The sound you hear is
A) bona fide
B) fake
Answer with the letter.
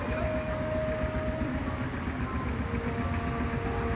A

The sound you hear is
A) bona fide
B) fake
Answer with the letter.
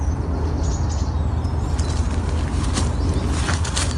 A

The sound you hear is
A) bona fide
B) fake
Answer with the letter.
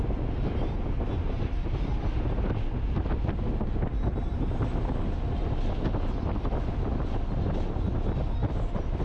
A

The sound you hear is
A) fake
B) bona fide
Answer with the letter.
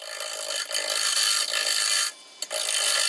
B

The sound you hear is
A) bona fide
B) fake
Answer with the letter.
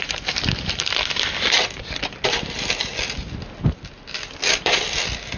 A